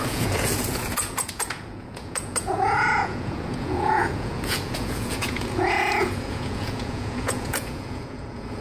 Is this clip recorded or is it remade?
remade